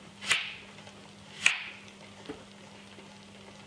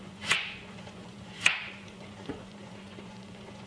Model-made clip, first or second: second